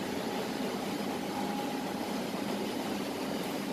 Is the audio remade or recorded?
remade